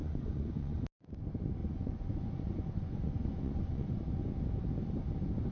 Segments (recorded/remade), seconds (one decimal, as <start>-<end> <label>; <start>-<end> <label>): 0.0-0.8 remade; 0.8-1.6 recorded; 1.6-4.0 remade; 4.0-5.5 recorded